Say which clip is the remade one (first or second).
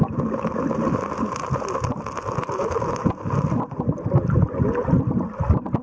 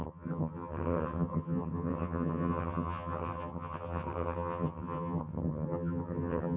second